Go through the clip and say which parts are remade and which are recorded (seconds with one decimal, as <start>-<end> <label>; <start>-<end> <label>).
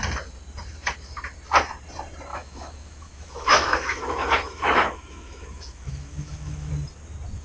0.0-2.3 recorded; 2.3-6.7 remade; 6.7-7.4 recorded